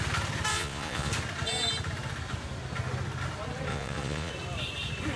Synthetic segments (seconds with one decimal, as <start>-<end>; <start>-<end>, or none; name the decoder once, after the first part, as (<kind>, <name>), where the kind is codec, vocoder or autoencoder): 0.5-1.1 (vocoder, Vocos); 3.7-4.3